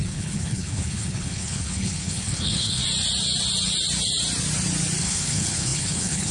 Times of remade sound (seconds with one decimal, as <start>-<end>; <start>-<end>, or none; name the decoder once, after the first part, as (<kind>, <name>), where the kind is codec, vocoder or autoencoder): 0.0-2.8 (codec, HILCodec); 5.0-6.3